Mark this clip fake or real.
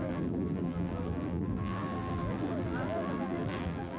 fake